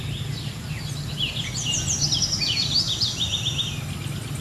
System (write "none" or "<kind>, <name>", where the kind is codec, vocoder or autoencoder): none